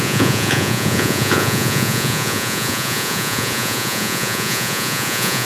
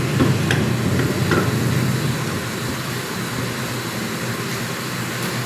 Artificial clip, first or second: first